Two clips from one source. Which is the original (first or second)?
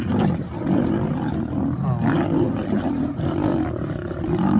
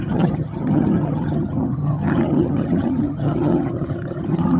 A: first